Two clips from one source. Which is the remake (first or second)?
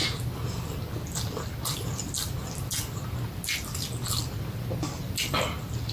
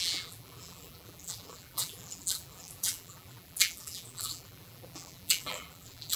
second